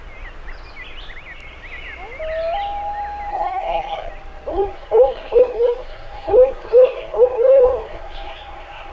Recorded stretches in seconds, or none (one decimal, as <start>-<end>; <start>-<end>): 0.0-3.3; 4.1-4.5